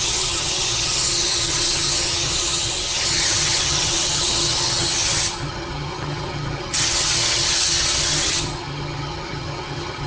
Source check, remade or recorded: remade